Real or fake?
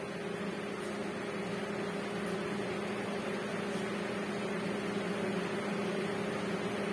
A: real